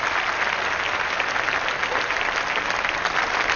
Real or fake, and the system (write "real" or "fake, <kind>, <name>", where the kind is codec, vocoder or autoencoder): real